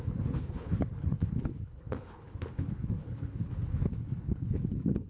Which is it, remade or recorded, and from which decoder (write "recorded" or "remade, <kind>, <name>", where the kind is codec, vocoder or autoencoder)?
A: remade, codec, HILCodec